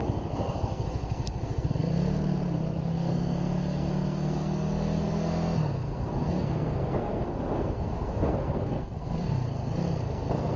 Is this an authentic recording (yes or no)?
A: no